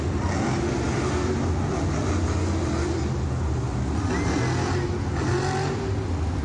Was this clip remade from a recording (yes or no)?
no